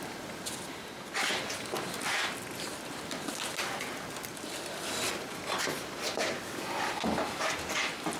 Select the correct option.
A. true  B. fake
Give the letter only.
A